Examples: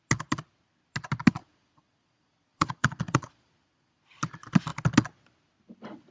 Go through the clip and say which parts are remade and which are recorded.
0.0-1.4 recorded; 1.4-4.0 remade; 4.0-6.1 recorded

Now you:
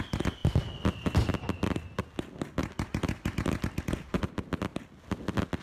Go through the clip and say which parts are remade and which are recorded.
0.0-5.6 recorded